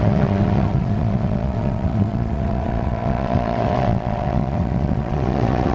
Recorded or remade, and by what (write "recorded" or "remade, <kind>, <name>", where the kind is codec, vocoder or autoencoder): remade, vocoder, WaveNeXt